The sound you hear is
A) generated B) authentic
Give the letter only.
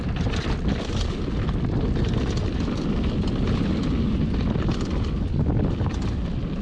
B